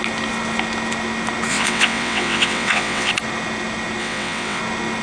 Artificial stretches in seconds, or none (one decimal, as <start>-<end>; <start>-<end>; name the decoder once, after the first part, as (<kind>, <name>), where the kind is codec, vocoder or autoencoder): 1.5-3.1 (vocoder, WaveNeXt); 4.0-4.6